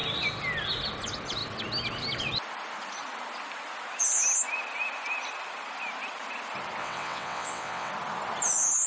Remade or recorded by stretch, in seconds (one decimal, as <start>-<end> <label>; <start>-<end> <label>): 0.0-6.8 recorded; 6.8-7.9 remade; 7.9-8.9 recorded